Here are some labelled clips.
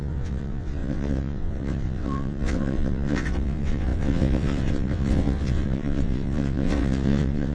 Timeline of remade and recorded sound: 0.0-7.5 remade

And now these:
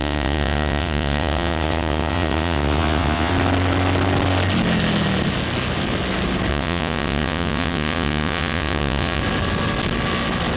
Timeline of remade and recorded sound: 0.0-3.3 remade; 3.3-6.5 recorded; 6.5-9.2 remade; 9.2-10.6 recorded

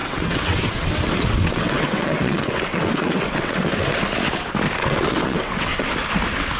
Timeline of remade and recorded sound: 0.0-4.0 remade; 4.0-4.8 recorded; 4.8-5.9 remade; 5.9-6.6 recorded

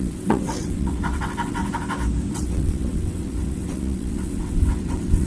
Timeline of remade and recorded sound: 0.0-1.6 remade; 1.6-2.3 recorded; 2.3-5.3 remade